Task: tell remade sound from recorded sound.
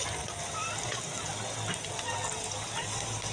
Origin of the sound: recorded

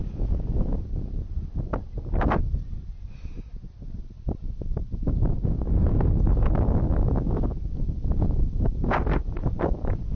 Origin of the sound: recorded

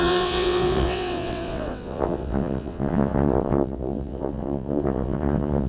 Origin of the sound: remade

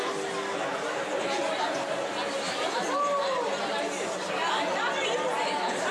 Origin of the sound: recorded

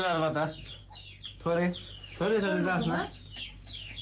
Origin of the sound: remade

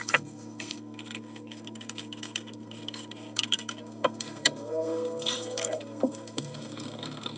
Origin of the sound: remade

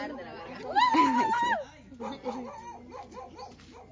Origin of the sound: recorded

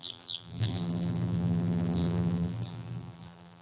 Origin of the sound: remade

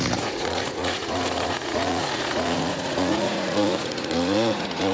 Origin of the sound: remade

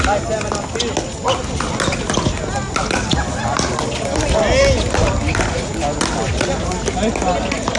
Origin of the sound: recorded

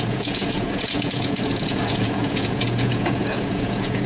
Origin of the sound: remade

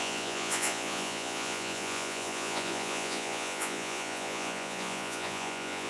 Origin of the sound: remade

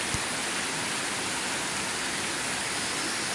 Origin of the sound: recorded